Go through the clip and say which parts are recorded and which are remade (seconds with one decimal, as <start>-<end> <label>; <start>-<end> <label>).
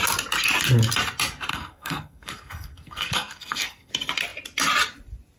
0.0-1.5 recorded; 1.5-3.9 remade; 3.9-5.4 recorded